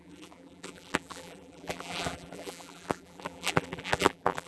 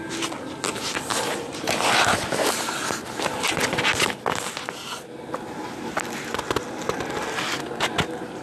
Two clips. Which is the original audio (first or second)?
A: second